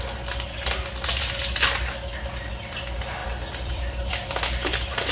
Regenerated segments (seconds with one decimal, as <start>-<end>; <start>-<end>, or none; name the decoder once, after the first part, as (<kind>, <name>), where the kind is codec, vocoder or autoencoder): 3.2-4.1 (vocoder, BigVGAN v2)